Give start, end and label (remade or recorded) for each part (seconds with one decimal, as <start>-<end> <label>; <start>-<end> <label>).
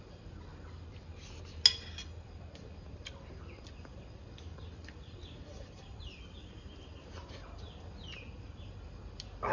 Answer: 0.0-9.5 recorded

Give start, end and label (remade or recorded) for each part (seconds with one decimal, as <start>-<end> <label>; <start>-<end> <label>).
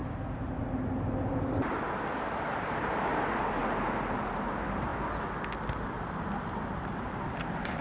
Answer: 0.0-3.6 remade; 3.6-4.4 recorded; 4.4-4.9 remade; 4.9-6.0 recorded; 6.0-7.8 remade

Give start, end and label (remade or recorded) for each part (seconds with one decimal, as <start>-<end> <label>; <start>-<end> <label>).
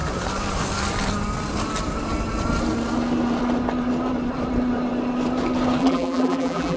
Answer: 0.0-5.8 recorded; 5.8-6.8 remade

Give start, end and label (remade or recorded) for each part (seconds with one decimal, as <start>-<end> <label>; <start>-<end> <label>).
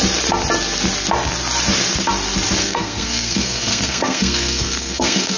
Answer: 0.0-2.6 recorded; 2.6-5.4 remade